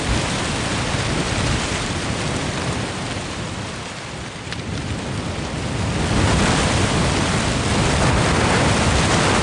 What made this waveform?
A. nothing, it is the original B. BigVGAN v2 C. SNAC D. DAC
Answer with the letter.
A